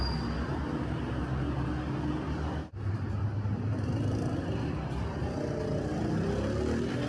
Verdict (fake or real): real